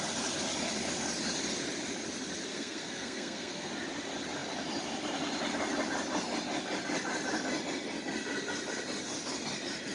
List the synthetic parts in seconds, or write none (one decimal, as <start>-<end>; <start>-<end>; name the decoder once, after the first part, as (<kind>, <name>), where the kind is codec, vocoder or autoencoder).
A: 2.5-3.7 (codec, SNAC)